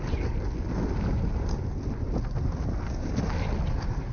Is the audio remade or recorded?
recorded